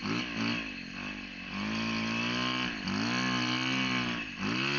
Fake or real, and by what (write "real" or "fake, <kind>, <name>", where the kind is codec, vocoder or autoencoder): real